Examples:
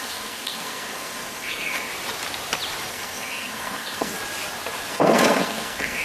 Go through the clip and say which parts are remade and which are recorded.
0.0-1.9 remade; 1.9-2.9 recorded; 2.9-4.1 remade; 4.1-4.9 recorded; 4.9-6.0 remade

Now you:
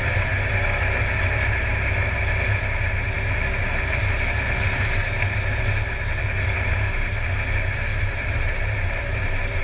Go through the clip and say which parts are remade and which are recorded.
0.0-7.9 recorded; 7.9-9.6 remade

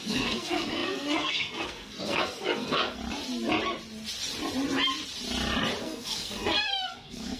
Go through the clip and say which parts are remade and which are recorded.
0.0-3.0 remade; 3.0-5.8 recorded; 5.8-7.4 remade

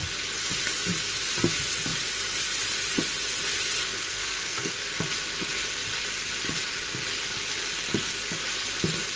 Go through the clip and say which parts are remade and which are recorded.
0.0-3.8 recorded; 3.8-4.9 remade; 4.9-9.2 recorded

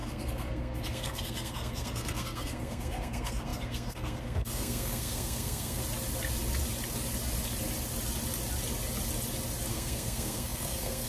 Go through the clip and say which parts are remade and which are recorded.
0.0-5.8 remade; 5.8-9.7 recorded; 9.7-11.1 remade

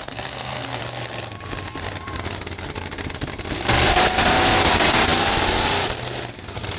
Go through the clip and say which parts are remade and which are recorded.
0.0-0.8 remade; 0.8-6.8 recorded